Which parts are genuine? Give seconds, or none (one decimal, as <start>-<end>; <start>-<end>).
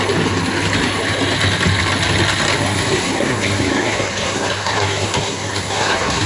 0.0-2.6